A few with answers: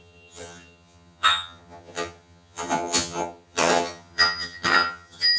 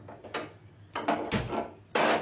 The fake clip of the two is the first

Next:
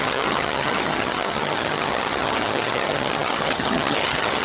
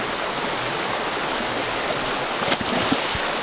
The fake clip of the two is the first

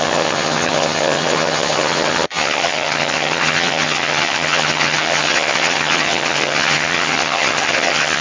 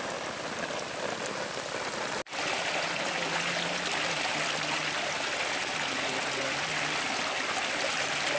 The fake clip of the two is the first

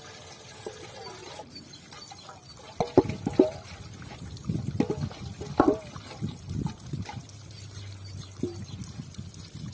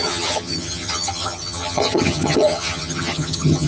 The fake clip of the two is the second